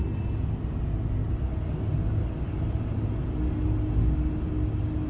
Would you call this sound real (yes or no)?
yes